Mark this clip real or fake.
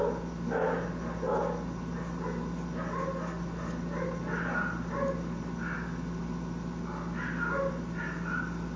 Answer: real